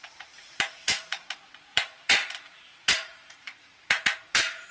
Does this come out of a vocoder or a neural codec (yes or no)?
yes